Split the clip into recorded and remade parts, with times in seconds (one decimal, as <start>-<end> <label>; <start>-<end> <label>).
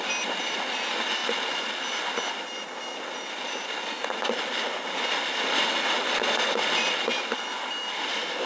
0.0-8.5 recorded